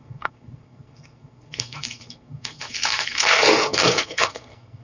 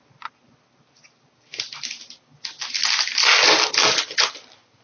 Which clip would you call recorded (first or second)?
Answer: second